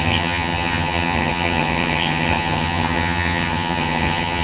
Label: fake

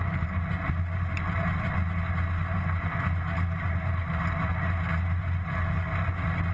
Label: real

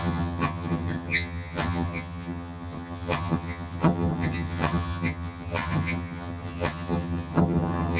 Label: fake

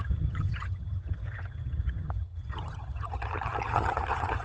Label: fake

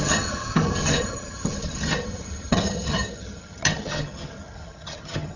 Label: fake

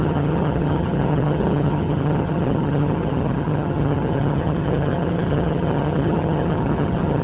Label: fake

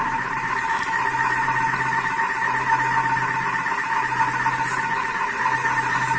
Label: real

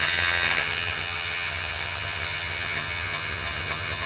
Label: fake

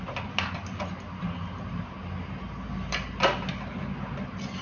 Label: real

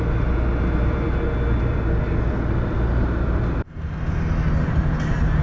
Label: real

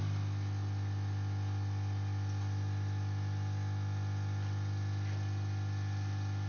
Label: real